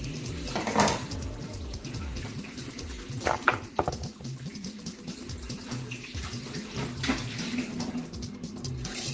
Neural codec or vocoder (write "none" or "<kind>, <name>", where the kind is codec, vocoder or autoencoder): none